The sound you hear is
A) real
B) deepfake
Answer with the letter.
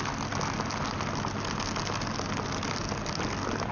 A